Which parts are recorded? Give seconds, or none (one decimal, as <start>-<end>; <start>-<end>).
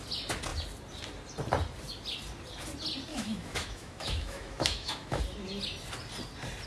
0.0-3.1; 5.2-6.7